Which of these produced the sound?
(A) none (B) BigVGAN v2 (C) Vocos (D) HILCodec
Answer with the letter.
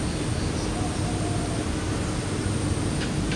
A